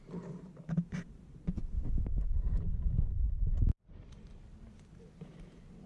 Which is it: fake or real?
fake